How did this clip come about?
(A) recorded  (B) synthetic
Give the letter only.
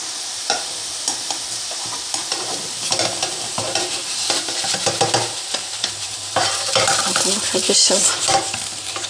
B